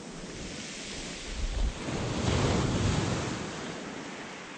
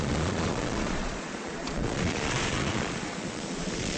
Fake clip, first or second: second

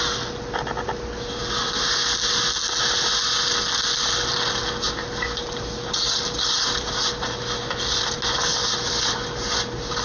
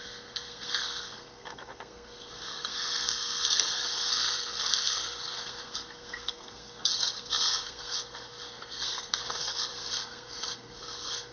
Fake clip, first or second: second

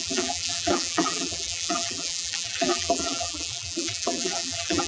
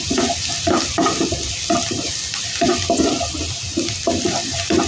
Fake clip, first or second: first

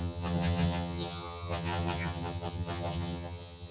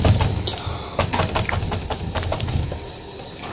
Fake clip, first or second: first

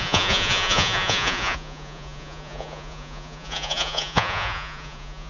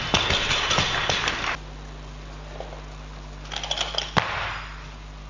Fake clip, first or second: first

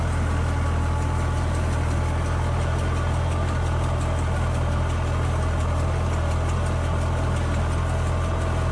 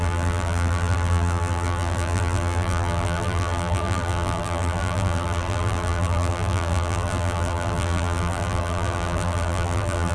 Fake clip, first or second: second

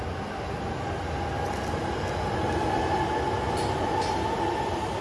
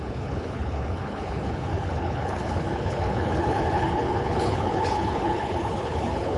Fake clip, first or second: second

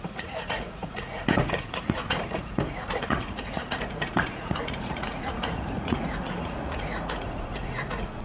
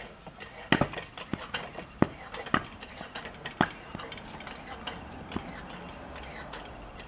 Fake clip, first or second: first